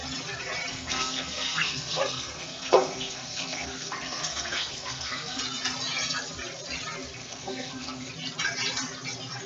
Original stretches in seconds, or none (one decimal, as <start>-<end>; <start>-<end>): 0.0-0.7; 5.4-7.2; 8.1-9.5